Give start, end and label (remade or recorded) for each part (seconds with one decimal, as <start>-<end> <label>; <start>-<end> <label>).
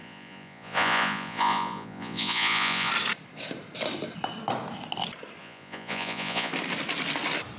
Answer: 0.0-2.9 remade; 2.9-5.4 recorded; 5.4-6.5 remade; 6.5-7.6 recorded